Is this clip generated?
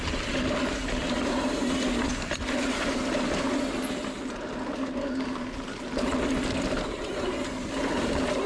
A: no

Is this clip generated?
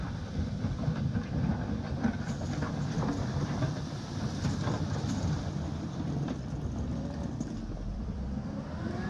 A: yes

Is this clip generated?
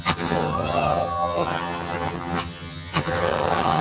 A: yes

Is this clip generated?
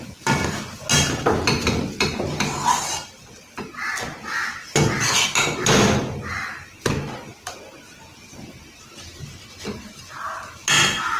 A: no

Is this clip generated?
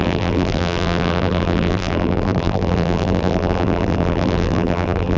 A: yes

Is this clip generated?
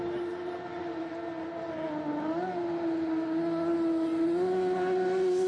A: no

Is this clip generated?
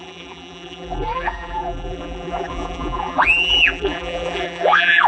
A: yes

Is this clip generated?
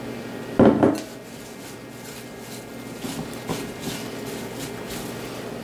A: no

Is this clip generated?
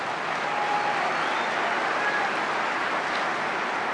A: no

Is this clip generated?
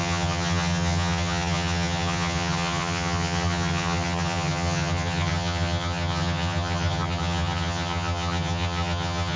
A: yes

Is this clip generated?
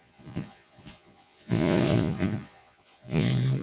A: yes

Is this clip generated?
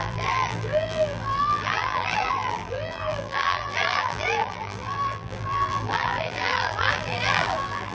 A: yes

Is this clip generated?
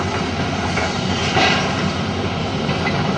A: yes